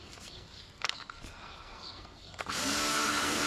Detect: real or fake fake